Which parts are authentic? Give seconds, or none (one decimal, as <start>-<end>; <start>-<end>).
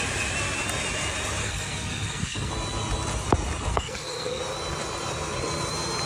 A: 0.0-1.4; 2.5-3.7; 4.4-6.1